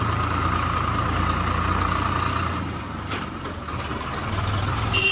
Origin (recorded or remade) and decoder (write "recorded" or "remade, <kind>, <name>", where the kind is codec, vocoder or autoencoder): remade, vocoder, BigVGAN v2